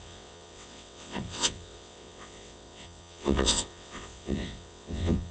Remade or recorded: remade